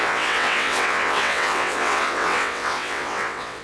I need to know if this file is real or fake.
fake